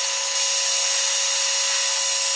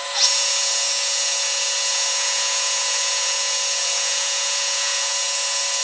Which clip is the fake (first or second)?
second